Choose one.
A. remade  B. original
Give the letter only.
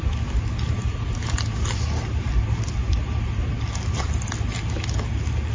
B